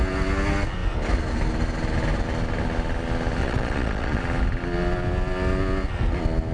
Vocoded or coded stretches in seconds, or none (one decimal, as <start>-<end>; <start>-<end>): 3.4-4.2